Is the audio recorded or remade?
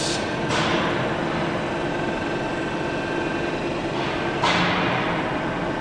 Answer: recorded